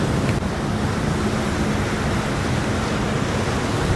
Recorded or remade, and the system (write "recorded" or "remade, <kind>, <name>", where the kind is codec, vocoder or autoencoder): recorded